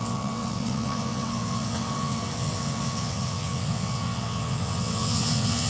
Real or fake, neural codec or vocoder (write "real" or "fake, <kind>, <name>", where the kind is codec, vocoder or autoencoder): fake, vocoder, WaveNeXt